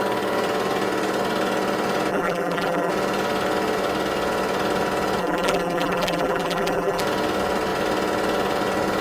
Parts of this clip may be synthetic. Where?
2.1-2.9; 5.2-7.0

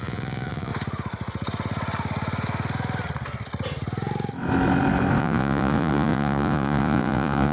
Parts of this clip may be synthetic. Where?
0.0-0.7; 5.2-7.5

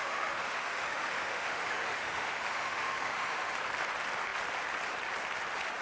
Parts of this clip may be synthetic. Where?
0.0-3.5